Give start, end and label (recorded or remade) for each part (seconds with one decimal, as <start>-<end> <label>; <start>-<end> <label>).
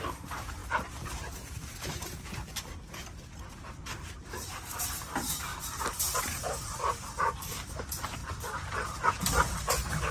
0.0-5.5 remade; 5.5-6.2 recorded; 6.2-8.2 remade; 8.2-9.1 recorded; 9.1-10.1 remade